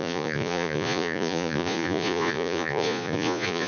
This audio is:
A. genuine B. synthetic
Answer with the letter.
B